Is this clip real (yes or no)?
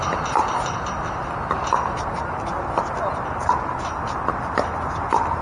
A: yes